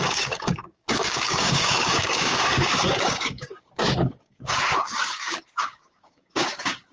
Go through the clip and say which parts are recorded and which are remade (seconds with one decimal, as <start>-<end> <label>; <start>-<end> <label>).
0.0-6.9 remade